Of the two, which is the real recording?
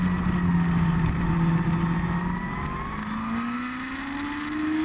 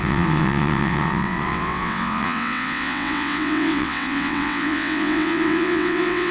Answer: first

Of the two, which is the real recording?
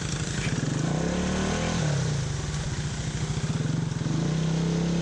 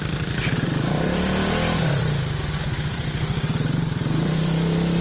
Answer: first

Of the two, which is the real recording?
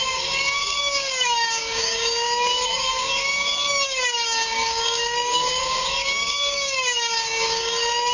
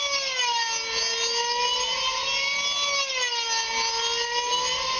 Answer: second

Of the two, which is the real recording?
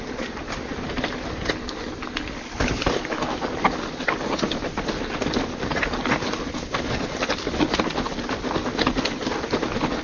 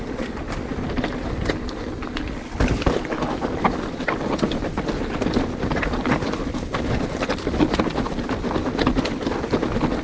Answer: first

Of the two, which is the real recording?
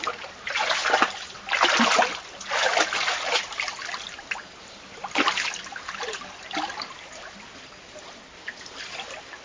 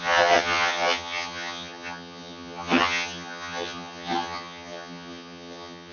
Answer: first